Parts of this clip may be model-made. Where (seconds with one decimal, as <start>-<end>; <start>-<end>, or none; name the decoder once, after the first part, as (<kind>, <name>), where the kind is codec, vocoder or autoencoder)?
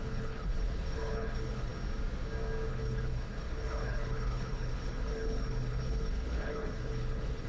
0.0-1.7 (codec, HILCodec); 2.7-7.5